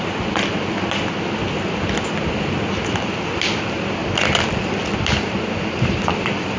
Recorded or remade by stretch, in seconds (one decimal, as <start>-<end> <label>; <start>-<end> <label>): 0.0-6.6 recorded